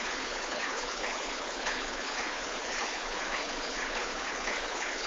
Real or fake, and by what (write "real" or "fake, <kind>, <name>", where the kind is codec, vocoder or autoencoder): fake, codec, HILCodec